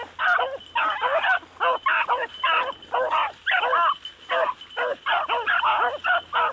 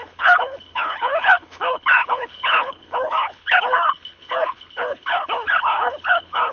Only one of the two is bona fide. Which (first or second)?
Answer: first